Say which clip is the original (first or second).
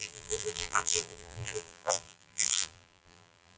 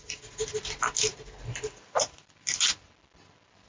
second